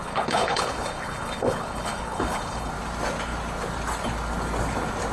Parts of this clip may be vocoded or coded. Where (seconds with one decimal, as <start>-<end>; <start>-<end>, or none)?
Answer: 0.0-2.7